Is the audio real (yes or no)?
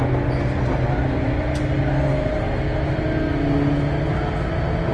yes